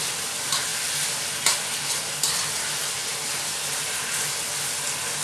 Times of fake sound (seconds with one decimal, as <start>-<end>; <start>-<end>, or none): 3.0-4.0